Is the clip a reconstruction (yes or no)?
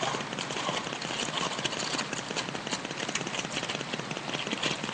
no